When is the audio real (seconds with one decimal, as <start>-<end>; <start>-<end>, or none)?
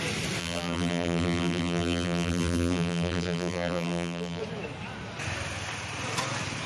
0.0-0.4; 4.4-6.7